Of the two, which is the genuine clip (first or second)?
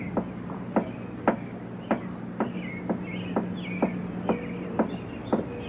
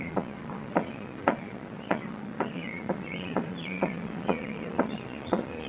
first